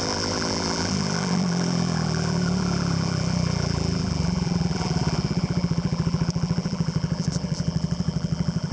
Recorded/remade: remade